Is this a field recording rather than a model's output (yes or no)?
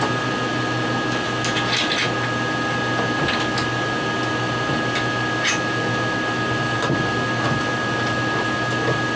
yes